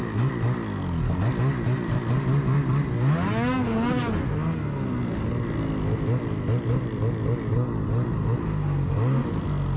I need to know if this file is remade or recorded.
recorded